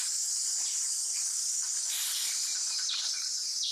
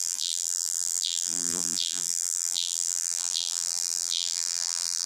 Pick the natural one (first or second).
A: first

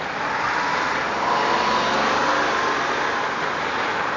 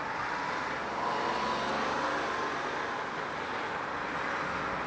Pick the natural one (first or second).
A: second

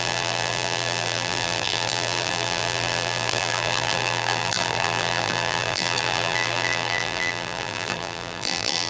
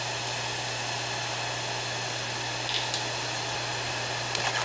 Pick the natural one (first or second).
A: second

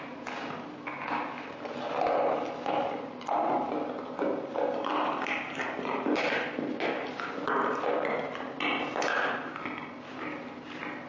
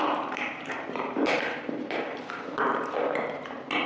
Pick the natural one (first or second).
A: first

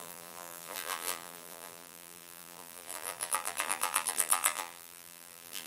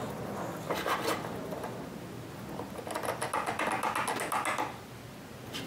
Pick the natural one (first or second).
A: second